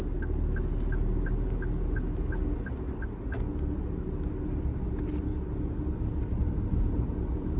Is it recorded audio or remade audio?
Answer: recorded